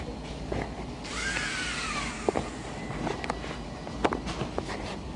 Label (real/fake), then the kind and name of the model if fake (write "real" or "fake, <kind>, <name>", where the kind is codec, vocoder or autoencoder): real